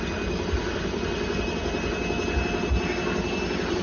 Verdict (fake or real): real